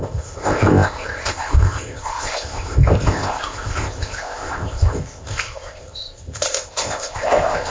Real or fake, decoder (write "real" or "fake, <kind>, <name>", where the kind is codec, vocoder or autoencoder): fake, codec, ZipCodec